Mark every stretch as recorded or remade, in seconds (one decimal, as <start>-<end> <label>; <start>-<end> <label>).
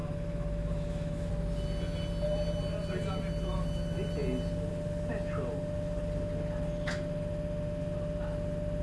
0.0-1.3 remade; 1.3-8.8 recorded